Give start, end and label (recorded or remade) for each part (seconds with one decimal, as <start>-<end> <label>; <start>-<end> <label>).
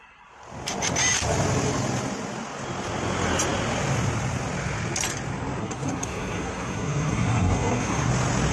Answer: 0.0-5.6 recorded; 5.6-8.1 remade; 8.1-8.5 recorded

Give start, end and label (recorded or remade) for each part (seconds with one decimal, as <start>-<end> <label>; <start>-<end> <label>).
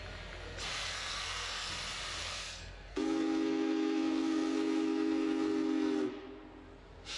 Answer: 0.0-0.7 recorded; 0.7-1.7 remade; 1.7-2.2 recorded; 2.2-6.1 remade; 6.1-7.2 recorded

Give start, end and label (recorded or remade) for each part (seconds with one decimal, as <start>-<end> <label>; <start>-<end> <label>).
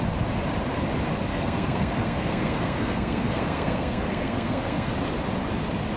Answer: 0.0-1.3 recorded; 1.3-4.9 remade; 4.9-6.0 recorded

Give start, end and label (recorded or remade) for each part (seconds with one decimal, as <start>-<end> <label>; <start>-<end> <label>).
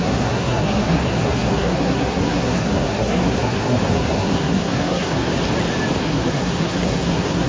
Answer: 0.0-5.3 remade; 5.3-6.0 recorded; 6.0-7.5 remade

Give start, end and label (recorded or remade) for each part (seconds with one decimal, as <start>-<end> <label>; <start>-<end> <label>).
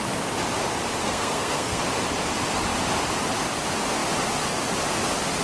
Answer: 0.0-1.0 recorded; 1.0-1.8 remade; 1.8-5.4 recorded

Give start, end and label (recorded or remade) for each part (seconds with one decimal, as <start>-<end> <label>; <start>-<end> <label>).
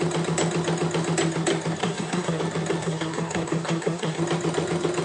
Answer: 0.0-1.8 recorded; 1.8-2.4 remade; 2.4-2.8 recorded; 2.8-4.2 remade; 4.2-5.0 recorded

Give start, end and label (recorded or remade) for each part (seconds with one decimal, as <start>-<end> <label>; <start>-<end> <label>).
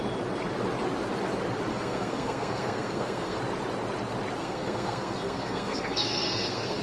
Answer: 0.0-1.7 recorded; 1.7-3.4 remade; 3.4-4.4 recorded; 4.4-6.8 remade